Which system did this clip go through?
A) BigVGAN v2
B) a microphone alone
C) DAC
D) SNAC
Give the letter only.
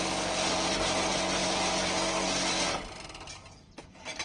B